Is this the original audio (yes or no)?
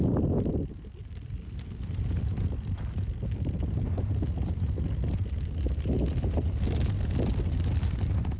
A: yes